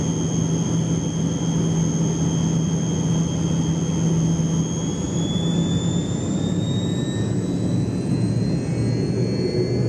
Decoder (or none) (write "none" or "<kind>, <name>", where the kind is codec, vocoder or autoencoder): none